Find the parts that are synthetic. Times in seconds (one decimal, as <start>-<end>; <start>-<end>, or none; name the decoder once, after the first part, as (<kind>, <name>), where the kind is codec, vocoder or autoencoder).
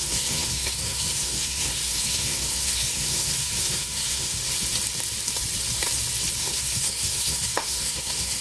0.0-4.4 (codec, SNAC); 6.4-8.4